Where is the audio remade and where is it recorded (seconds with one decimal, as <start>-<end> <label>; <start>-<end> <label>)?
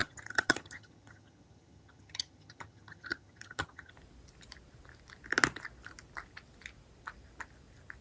0.0-3.9 remade; 3.9-8.0 recorded